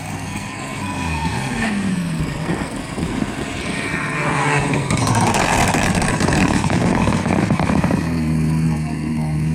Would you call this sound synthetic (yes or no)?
yes